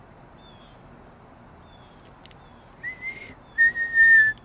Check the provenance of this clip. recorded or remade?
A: recorded